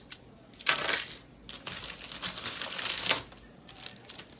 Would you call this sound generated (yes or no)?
no